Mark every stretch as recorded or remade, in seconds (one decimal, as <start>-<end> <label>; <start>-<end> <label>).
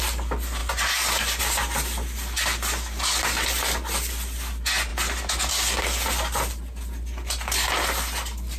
0.0-8.6 recorded